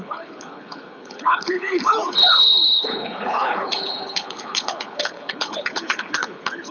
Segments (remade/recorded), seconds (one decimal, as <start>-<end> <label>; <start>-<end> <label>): 0.0-6.7 remade